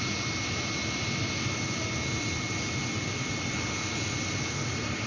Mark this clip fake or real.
real